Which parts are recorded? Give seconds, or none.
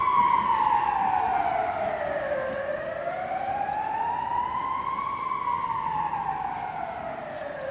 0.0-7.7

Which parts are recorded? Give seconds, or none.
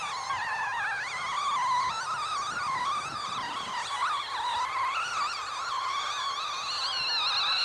0.0-7.6